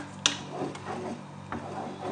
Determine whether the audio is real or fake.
real